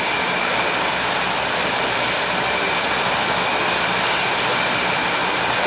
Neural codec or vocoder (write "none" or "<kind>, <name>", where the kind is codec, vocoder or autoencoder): none